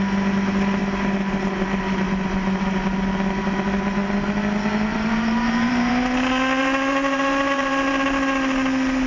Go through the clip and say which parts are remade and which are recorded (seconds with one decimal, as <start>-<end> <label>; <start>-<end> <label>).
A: 0.0-4.9 recorded; 4.9-5.9 remade; 5.9-6.6 recorded; 6.6-7.9 remade; 7.9-9.1 recorded

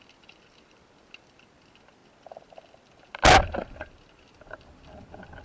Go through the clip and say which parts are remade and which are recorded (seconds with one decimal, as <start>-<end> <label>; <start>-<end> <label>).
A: 0.0-5.4 recorded

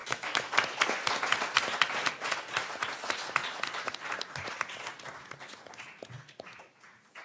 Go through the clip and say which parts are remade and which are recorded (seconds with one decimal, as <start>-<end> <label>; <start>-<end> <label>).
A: 0.0-0.5 remade; 0.5-7.2 recorded

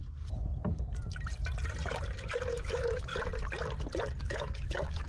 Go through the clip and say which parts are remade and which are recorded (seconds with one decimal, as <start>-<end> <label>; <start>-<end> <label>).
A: 0.0-2.5 recorded; 2.5-3.1 remade; 3.1-4.2 recorded; 4.2-5.1 remade

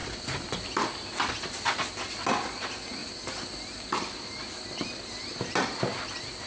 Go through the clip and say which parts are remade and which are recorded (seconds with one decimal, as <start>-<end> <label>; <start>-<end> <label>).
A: 0.0-0.9 remade; 0.9-6.5 recorded

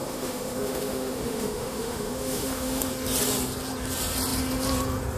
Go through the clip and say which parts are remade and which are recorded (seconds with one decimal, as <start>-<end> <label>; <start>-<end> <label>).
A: 0.0-2.9 remade; 2.9-5.2 recorded

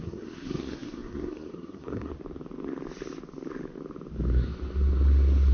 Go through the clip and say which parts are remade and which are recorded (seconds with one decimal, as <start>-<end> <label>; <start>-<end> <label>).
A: 0.0-2.1 remade; 2.1-5.5 recorded

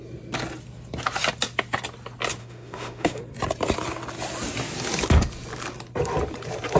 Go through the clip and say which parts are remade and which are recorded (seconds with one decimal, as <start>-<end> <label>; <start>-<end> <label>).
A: 0.0-2.4 recorded; 2.4-3.2 remade; 3.2-6.8 recorded